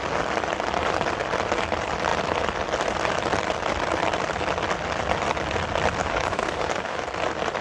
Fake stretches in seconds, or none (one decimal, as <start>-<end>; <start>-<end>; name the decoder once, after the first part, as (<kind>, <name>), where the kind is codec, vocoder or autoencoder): 6.0-7.0 (codec, DAC)